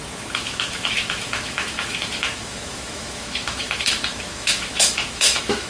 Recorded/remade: remade